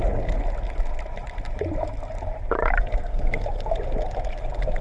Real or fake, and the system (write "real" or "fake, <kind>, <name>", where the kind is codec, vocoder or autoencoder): real